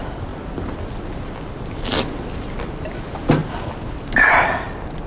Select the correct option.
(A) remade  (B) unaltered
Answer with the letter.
B